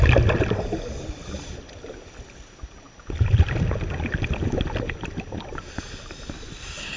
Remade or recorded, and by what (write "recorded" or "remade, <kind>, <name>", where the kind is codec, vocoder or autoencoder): recorded